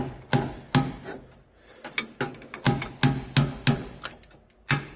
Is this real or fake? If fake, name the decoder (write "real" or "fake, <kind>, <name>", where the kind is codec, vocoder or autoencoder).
real